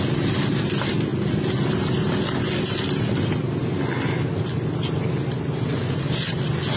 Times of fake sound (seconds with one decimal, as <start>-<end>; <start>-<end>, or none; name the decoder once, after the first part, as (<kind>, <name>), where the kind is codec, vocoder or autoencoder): none